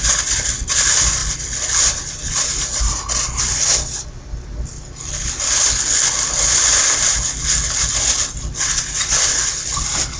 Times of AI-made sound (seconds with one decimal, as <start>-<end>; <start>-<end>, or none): none